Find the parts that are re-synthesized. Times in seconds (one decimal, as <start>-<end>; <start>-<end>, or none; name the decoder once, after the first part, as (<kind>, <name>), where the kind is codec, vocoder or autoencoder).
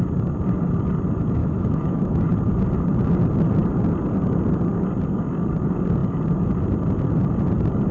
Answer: 1.4-2.2 (autoencoder, DAC-VAE)